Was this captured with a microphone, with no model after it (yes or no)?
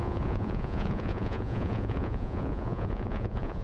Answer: no